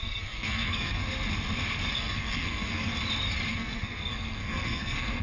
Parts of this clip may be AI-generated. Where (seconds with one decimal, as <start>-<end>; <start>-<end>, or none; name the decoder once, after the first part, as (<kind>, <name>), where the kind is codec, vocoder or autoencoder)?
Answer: 0.0-1.0 (codec, SNAC); 1.9-2.9; 3.5-5.2